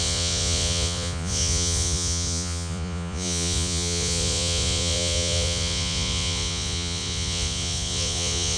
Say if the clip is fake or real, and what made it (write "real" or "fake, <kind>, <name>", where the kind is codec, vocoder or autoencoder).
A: fake, vocoder, Vocos